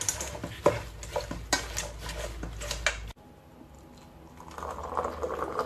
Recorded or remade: recorded